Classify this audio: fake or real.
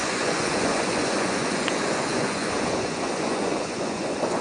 fake